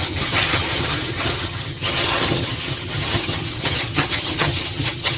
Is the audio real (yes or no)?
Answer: no